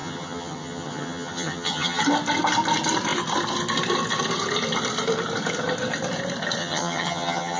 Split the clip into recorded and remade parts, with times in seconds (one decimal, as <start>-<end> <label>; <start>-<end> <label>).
0.0-2.0 remade; 2.0-6.6 recorded; 6.6-7.6 remade